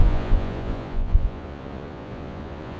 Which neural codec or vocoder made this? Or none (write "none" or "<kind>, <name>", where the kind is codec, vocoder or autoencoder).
vocoder, Vocos